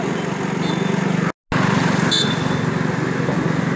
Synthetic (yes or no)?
no